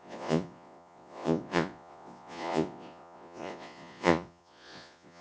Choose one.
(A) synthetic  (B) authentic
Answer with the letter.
A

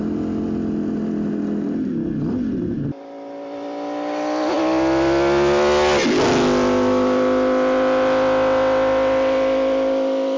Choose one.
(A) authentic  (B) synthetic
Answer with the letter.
A